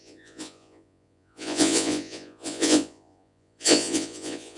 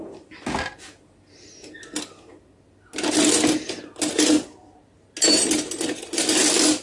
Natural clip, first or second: second